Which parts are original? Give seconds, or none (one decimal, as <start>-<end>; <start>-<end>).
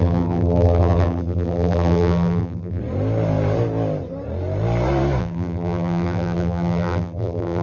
2.8-5.2